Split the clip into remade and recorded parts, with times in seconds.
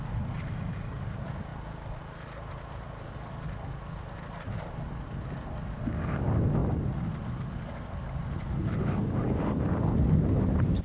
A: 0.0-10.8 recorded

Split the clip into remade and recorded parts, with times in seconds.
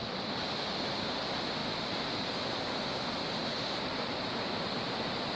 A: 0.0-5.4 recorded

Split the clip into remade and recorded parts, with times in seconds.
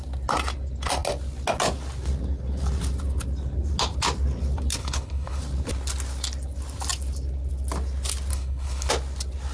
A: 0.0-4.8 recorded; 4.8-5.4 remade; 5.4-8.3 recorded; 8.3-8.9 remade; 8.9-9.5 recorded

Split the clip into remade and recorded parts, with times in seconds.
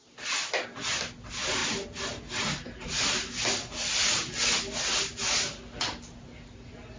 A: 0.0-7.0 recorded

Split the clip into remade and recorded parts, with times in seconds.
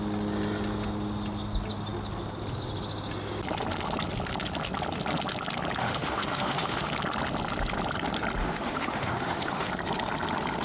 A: 0.0-5.8 recorded; 5.8-6.9 remade; 6.9-8.4 recorded; 8.4-9.7 remade; 9.7-10.6 recorded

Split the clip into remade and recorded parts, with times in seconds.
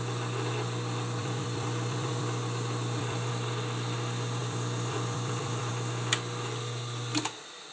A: 0.0-1.2 recorded; 1.2-3.3 remade; 3.3-4.4 recorded; 4.4-5.7 remade; 5.7-7.7 recorded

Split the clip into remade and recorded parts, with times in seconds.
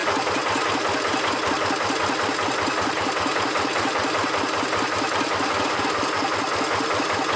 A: 0.0-7.4 recorded